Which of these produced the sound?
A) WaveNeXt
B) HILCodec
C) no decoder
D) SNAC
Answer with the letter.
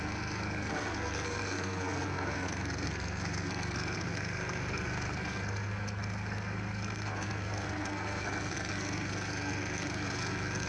D